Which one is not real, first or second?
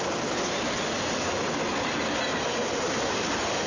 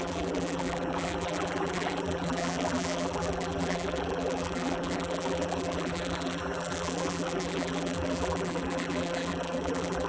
second